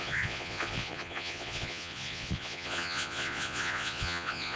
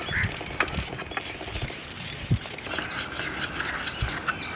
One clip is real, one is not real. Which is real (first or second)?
second